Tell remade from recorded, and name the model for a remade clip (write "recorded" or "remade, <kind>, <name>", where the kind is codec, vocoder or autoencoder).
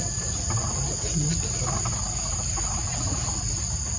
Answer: recorded